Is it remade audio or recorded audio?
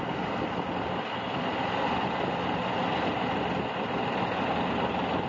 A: recorded